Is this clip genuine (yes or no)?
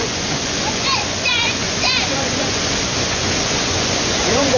no